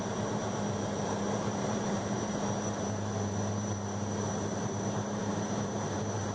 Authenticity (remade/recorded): remade